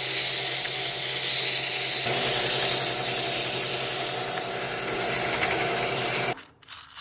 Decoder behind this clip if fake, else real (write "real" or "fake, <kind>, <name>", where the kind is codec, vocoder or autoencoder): real